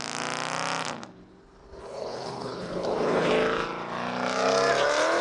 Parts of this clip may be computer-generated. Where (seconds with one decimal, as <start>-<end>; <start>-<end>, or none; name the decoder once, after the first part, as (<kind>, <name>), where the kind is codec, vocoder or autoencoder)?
1.8-3.3 (codec, HILCodec)